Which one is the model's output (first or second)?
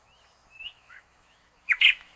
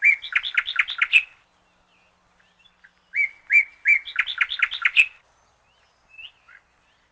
first